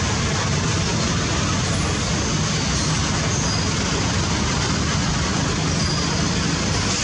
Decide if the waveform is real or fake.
real